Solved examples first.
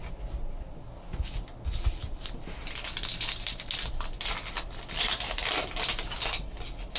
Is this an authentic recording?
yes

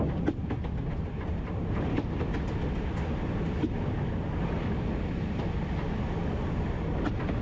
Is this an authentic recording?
yes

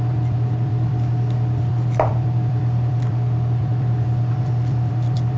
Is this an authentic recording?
no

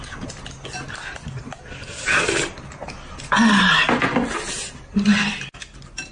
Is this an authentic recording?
yes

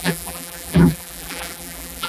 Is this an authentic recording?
no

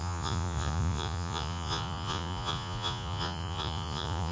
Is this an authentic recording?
no